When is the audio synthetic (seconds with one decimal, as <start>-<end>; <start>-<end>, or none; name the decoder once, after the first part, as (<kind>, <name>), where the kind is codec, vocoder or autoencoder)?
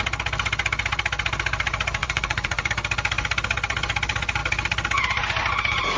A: 2.0-2.7 (vocoder, Vocos)